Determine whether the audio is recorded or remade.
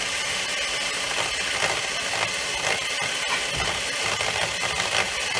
recorded